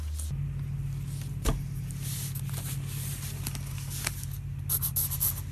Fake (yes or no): no